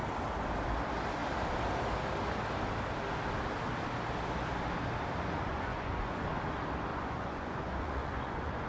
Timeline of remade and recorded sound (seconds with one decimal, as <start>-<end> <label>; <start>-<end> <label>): 0.0-5.5 recorded; 5.5-6.3 remade; 6.3-6.9 recorded; 6.9-8.7 remade